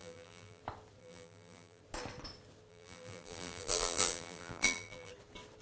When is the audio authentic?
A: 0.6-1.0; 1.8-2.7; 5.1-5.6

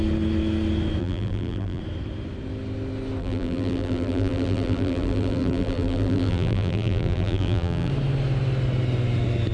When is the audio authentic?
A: 0.0-1.0; 1.8-3.2; 7.9-9.5

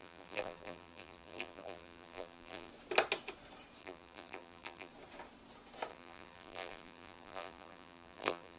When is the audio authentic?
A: 2.7-3.8; 4.9-5.9

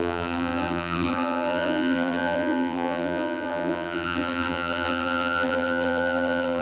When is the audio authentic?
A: none

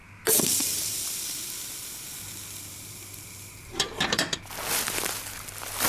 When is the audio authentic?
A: 0.0-2.1; 4.4-5.9

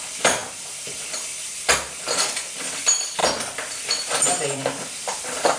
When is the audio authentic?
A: 0.4-2.8